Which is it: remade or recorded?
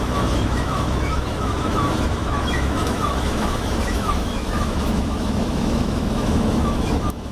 remade